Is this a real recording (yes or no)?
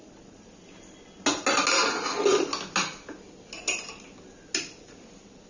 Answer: yes